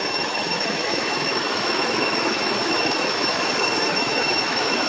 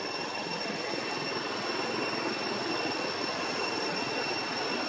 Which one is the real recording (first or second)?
second